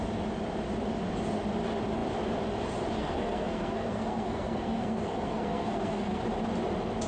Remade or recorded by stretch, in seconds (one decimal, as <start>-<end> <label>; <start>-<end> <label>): 0.0-3.0 recorded; 3.0-6.2 remade; 6.2-7.1 recorded